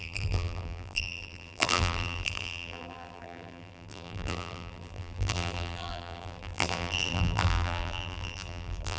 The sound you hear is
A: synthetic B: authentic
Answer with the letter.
A